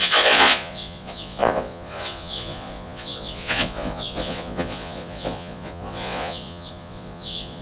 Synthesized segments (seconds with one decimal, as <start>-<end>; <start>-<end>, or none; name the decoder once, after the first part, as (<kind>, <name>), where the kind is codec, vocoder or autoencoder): 0.0-7.6 (vocoder, Vocos)